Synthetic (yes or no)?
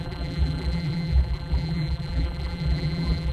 yes